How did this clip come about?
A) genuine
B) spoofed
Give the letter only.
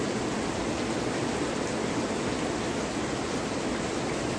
A